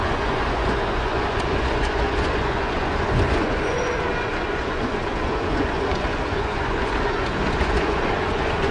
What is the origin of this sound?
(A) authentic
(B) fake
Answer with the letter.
B